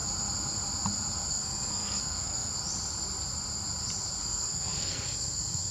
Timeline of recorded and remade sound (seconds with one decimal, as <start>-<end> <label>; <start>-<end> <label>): 0.0-1.3 recorded; 1.3-2.5 remade; 2.5-4.2 recorded; 4.2-5.7 remade